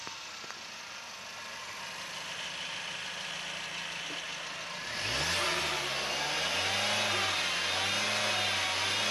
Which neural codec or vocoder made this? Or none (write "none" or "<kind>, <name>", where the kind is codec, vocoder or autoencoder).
none